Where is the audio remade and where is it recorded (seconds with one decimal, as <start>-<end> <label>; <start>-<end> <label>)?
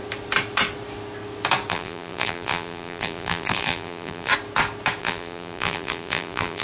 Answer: 0.0-1.7 recorded; 1.7-4.3 remade; 4.3-5.0 recorded; 5.0-6.6 remade